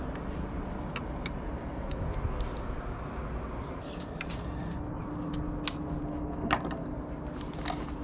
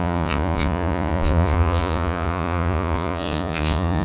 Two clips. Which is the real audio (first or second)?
first